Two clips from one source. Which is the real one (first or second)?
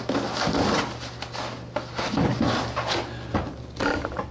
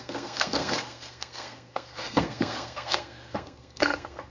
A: first